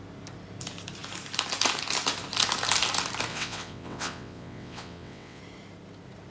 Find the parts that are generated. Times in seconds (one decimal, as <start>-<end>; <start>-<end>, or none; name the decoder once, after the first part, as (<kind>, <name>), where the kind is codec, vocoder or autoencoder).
3.3-5.4 (vocoder, WaveNeXt)